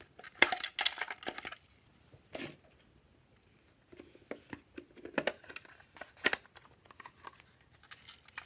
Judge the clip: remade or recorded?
recorded